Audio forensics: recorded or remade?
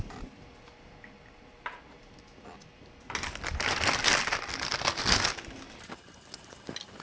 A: recorded